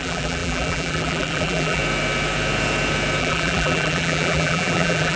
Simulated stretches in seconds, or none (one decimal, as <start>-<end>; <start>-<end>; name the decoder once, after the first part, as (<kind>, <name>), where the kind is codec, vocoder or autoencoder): 0.0-1.8 (vocoder, BigVGAN v2); 3.2-5.2